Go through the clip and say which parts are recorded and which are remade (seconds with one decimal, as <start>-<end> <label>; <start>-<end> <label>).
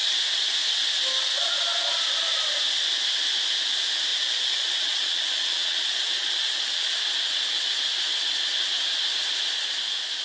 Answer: 0.0-4.1 recorded; 4.1-6.9 remade; 6.9-10.2 recorded